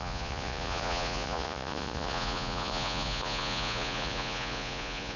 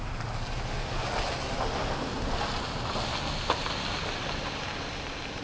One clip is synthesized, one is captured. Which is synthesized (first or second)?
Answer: first